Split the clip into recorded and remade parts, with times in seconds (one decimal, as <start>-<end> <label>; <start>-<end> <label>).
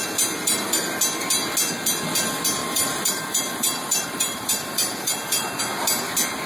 0.0-0.4 recorded; 0.4-1.0 remade; 1.0-2.6 recorded; 2.6-5.6 remade; 5.6-6.5 recorded